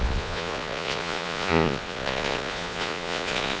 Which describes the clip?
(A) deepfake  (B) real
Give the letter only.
A